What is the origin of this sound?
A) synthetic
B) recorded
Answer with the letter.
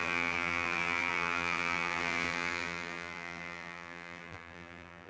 A